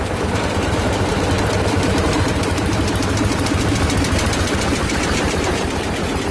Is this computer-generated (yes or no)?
yes